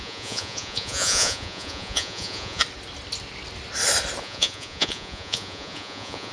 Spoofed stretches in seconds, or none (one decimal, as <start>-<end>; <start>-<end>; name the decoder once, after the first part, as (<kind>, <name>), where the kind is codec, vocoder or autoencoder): 0.0-2.6 (vocoder, Vocos); 4.2-6.3